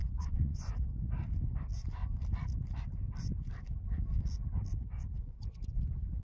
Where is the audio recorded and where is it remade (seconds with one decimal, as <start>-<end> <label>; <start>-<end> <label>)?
0.0-0.7 remade; 0.7-6.2 recorded